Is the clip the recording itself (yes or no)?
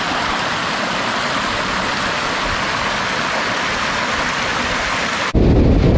yes